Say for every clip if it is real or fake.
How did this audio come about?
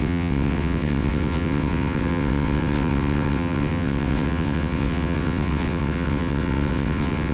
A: fake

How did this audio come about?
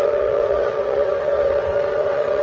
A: fake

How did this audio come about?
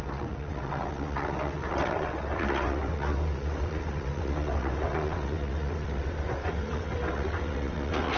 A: fake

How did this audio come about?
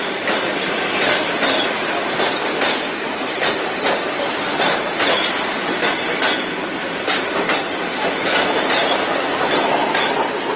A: real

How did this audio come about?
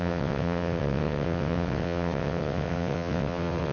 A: fake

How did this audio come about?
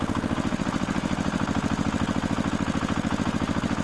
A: real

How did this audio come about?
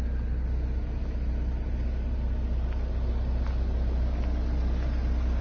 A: real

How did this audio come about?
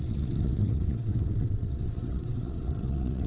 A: fake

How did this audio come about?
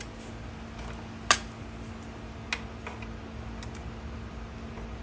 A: real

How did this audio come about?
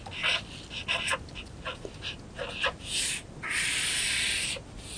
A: real